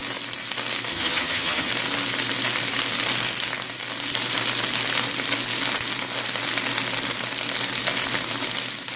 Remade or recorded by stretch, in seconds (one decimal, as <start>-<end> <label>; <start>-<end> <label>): 0.0-0.9 recorded; 0.9-1.7 remade; 1.7-9.0 recorded